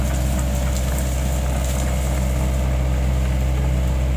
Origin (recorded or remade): recorded